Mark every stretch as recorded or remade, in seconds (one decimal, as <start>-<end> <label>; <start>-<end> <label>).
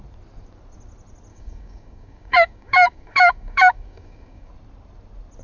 0.0-1.3 recorded; 1.3-4.5 remade; 4.5-5.4 recorded